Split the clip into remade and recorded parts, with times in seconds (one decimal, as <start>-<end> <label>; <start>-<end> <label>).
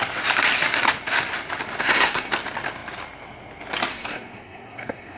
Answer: 0.0-1.8 recorded; 1.8-2.3 remade; 2.3-3.9 recorded; 3.9-5.2 remade